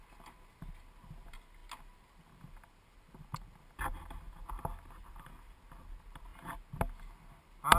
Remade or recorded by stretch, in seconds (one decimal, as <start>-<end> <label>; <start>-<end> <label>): 0.0-5.0 recorded; 5.0-5.5 remade; 5.5-7.8 recorded